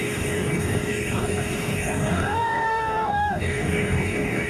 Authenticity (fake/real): fake